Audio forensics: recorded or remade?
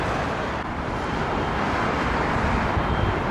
remade